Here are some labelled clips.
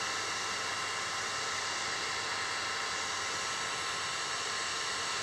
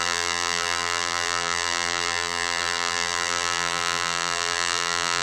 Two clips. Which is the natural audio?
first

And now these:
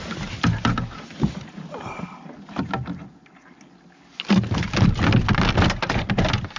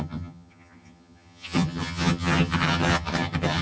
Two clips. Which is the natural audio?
first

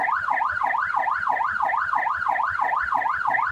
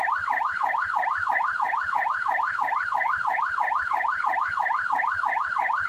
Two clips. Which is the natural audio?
first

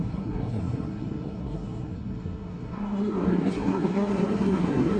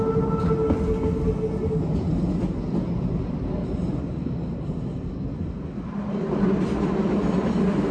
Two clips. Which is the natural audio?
second